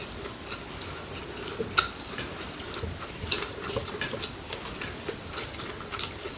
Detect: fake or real real